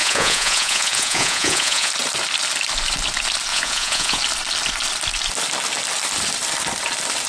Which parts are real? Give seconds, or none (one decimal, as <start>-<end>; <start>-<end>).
1.9-3.5; 4.2-7.3